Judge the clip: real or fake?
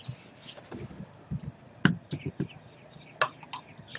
real